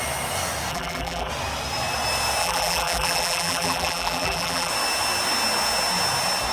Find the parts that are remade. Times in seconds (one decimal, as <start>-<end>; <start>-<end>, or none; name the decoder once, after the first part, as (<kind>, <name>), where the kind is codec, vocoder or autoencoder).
0.7-1.3 (vocoder, BigVGAN v2); 2.4-4.7

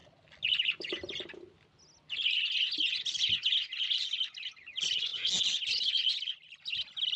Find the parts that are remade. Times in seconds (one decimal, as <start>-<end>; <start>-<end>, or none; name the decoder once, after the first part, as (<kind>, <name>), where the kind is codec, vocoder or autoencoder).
0.0-1.4 (vocoder, BigVGAN v2)

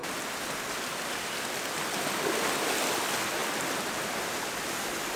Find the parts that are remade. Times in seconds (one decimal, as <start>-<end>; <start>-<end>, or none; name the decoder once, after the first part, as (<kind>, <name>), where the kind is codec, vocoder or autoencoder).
0.0-1.7 (vocoder, BigVGAN v2)

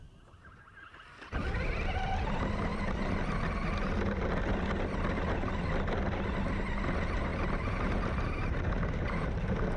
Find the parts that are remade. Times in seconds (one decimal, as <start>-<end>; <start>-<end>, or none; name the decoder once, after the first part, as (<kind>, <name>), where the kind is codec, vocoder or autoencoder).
7.3-9.4 (vocoder, BigVGAN v2)

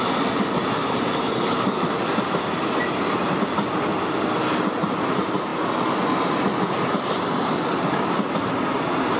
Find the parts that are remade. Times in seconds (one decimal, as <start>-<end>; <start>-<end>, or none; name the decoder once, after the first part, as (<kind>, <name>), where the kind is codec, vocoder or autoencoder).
none

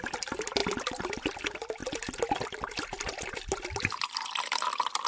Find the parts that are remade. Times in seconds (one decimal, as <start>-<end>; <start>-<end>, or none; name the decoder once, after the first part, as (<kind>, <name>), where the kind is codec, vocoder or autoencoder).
1.8-5.1 (vocoder, BigVGAN v2)

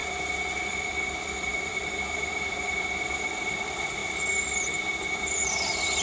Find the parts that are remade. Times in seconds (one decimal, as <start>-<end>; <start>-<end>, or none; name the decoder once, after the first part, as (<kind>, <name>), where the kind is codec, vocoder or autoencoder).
0.7-4.0 (vocoder, BigVGAN v2); 5.1-6.0

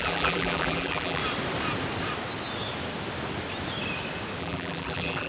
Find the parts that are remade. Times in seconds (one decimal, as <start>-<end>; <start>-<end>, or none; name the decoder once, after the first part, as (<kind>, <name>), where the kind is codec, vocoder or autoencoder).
0.0-1.2 (vocoder, BigVGAN v2); 4.4-5.3